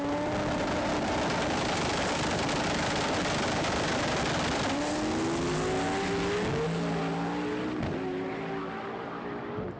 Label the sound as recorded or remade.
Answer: recorded